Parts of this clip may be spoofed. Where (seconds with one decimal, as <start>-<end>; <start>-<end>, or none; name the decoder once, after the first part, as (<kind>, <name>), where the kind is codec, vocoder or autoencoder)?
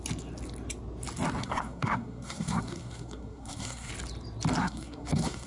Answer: 1.4-3.9 (codec, SNAC); 4.6-5.5